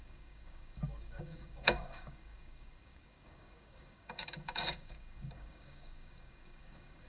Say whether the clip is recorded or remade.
remade